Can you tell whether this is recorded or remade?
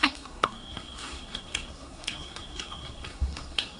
remade